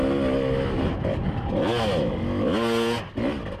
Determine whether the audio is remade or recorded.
recorded